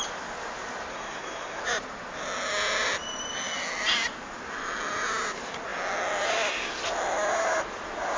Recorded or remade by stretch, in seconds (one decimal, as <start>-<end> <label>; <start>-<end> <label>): 0.0-0.9 recorded; 0.9-1.6 remade; 1.6-8.2 recorded